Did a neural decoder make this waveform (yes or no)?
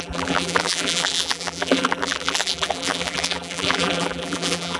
yes